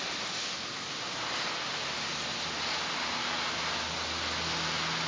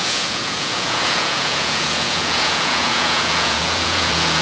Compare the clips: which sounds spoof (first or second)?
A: second